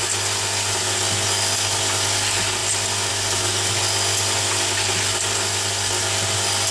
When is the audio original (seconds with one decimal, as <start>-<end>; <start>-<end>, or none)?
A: 0.0-6.7